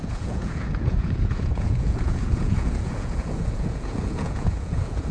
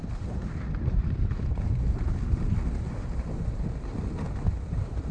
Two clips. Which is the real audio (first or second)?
second